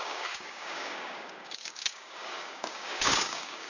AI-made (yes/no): yes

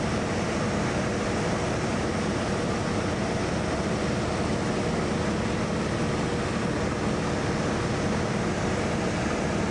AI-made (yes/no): no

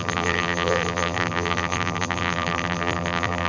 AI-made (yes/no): yes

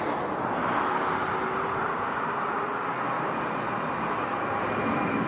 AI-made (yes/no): no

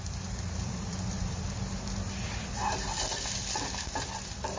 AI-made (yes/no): yes